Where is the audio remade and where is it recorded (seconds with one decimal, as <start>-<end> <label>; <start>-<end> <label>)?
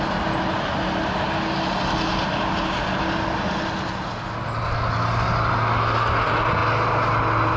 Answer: 0.0-7.6 recorded